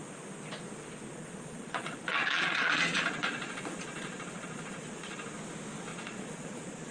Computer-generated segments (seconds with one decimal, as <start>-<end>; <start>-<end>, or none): 1.1-5.2; 5.9-6.9